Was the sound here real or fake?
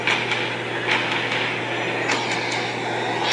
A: real